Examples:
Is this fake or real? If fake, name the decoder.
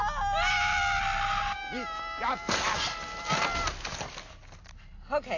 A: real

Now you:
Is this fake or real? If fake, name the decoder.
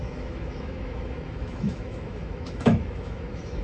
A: fake, autoencoder, DAC-VAE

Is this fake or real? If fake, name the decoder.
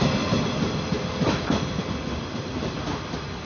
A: real